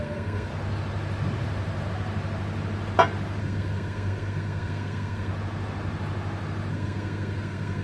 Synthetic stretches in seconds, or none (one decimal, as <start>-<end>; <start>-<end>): 0.0-0.5; 3.4-5.3; 6.7-7.8